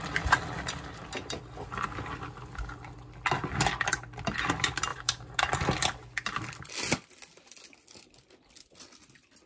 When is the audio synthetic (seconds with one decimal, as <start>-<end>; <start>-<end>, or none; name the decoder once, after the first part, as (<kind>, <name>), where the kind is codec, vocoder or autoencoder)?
4.9-5.5 (vocoder, BigVGAN v2)